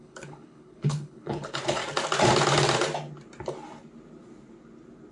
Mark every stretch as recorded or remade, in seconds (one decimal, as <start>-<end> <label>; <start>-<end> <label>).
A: 0.0-1.8 remade; 1.8-5.1 recorded